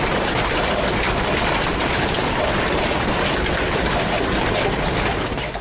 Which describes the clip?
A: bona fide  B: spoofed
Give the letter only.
A